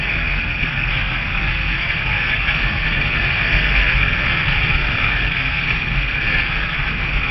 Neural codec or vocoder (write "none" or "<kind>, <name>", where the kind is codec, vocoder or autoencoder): codec, SNAC